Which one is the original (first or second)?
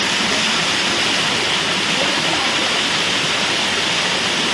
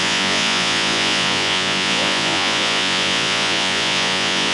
first